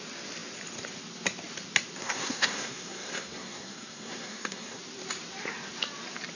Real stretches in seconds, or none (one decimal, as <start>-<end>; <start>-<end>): 0.0-2.0; 4.8-6.3